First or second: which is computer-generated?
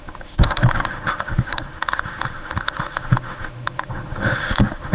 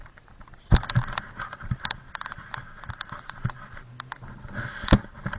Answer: first